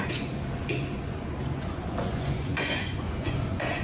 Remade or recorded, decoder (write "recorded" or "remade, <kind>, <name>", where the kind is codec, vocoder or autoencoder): remade, vocoder, Vocos